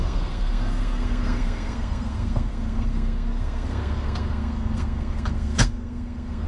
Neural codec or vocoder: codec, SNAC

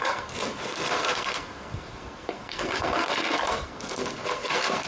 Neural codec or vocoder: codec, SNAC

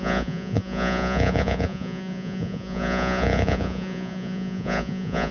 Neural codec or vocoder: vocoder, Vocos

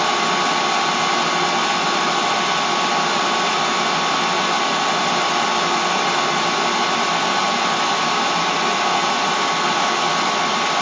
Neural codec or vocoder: none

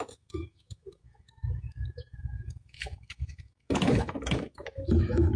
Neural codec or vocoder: autoencoder, DAC-VAE